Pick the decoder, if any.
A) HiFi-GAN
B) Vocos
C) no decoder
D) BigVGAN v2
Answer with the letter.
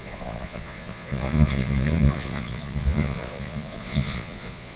B